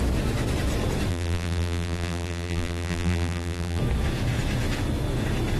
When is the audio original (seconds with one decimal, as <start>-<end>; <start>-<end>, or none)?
0.0-1.1; 3.8-5.6

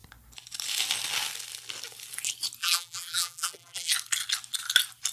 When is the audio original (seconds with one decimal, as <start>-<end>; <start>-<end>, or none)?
0.0-2.6; 3.9-5.1

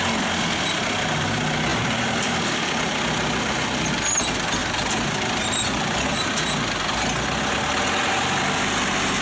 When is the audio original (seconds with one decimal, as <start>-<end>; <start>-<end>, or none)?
0.0-1.7; 3.9-4.6; 6.2-9.2

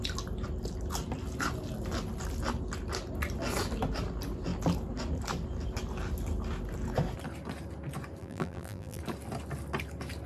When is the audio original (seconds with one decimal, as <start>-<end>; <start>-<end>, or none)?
0.0-8.2; 9.0-10.3

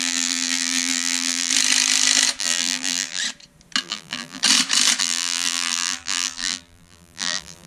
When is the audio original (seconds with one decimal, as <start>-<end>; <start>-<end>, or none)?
1.5-2.4; 3.2-3.8; 4.4-5.0

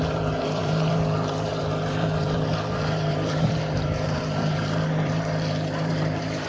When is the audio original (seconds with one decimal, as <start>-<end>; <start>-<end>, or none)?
none

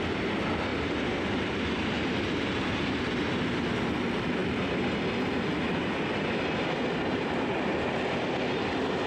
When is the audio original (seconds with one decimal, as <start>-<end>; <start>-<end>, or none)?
0.0-0.7; 3.1-9.1